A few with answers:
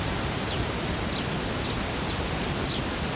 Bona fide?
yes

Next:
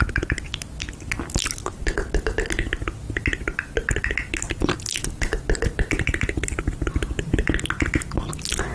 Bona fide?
yes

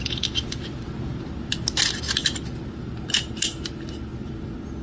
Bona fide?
yes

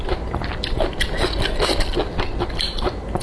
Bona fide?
yes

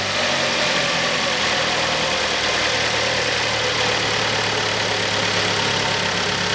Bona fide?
yes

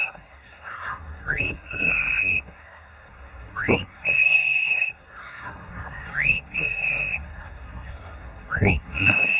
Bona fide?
no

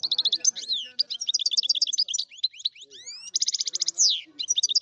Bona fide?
yes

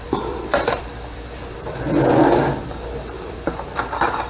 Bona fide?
no